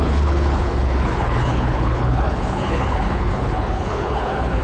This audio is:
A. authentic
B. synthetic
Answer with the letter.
B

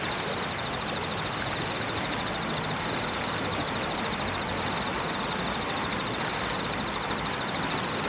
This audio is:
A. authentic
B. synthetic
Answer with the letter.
A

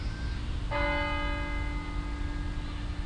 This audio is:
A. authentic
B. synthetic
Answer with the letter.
A